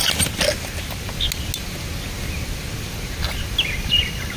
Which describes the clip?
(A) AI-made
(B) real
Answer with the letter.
B